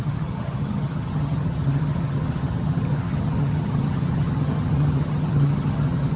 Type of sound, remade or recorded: remade